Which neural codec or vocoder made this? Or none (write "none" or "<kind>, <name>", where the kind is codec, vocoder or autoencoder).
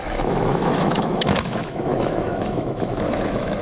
autoencoder, DAC-VAE